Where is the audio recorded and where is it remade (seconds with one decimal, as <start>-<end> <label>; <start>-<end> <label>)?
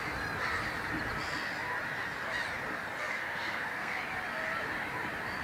0.0-3.1 recorded; 3.1-4.0 remade; 4.0-5.4 recorded